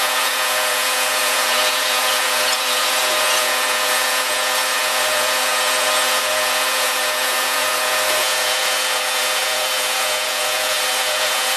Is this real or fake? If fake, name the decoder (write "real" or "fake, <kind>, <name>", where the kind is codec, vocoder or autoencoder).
fake, vocoder, Vocos